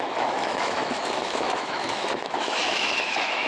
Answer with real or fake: fake